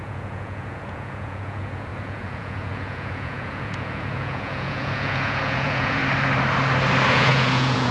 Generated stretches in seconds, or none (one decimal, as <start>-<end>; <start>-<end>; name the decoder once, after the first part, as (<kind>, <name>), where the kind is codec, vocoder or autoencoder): 0.0-6.0 (vocoder, Vocos); 7.1-7.9